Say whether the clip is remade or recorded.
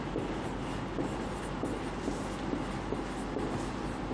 recorded